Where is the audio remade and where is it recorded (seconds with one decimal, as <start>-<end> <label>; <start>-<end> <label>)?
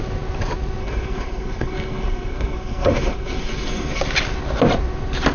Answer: 0.0-0.8 recorded; 0.8-4.0 remade; 4.0-5.3 recorded